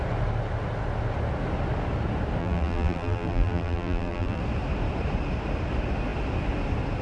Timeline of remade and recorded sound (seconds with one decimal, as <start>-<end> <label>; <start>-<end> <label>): 0.0-2.4 recorded; 2.4-4.4 remade; 4.4-7.0 recorded